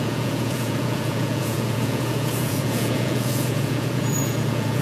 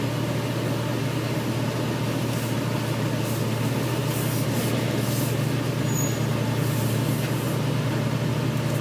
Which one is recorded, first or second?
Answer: second